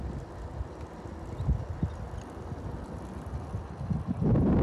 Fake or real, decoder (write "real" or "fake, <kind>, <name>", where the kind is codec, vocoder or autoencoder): real